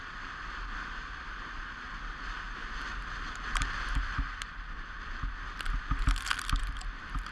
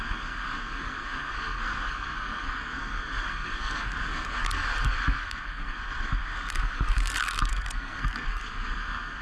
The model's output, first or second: second